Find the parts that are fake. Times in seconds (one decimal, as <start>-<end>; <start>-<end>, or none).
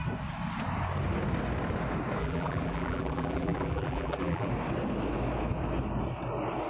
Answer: 2.2-4.5